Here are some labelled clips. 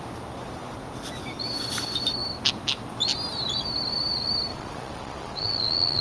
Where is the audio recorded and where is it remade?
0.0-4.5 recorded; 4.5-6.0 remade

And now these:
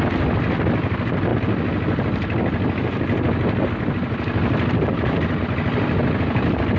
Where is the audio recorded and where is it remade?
0.0-6.8 recorded

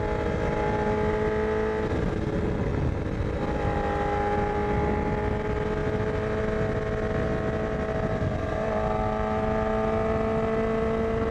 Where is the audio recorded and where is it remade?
0.0-11.3 recorded

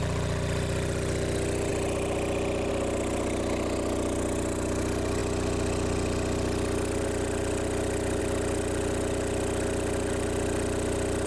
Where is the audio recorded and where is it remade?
0.0-11.3 recorded

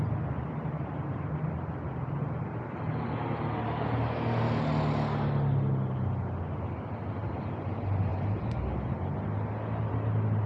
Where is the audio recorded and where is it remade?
0.0-10.5 recorded